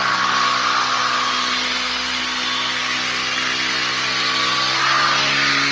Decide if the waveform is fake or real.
real